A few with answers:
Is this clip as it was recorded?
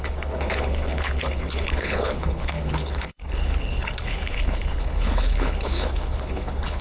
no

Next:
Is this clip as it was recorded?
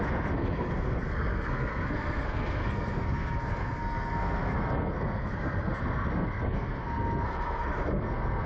no